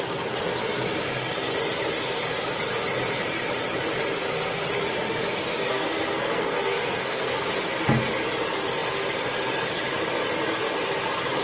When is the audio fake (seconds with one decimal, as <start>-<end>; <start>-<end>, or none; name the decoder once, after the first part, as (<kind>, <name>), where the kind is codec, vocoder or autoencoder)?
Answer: 5.7-7.4 (codec, SNAC)